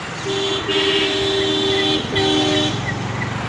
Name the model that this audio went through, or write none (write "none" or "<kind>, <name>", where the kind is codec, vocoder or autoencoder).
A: none